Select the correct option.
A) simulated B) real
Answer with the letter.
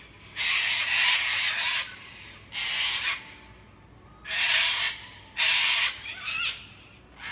B